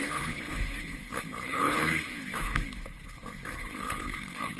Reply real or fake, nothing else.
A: fake